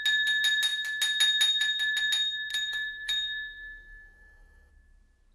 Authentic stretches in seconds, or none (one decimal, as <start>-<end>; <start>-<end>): 0.0-2.5; 4.7-5.3